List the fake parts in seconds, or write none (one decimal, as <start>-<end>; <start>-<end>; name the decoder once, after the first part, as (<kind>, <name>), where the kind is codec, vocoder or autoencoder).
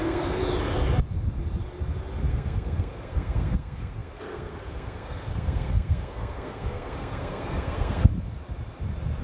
0.0-0.4 (codec, SNAC); 2.3-8.1